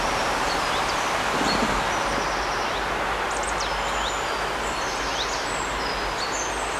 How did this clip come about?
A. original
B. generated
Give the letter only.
A